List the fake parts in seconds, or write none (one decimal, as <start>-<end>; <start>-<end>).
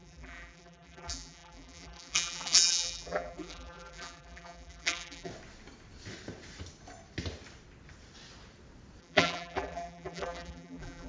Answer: 0.0-5.3; 9.0-11.1